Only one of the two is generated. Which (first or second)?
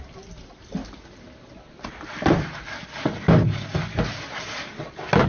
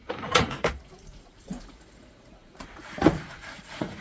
second